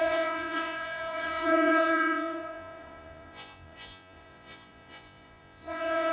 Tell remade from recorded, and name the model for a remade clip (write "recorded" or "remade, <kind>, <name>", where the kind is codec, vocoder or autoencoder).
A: remade, vocoder, Vocos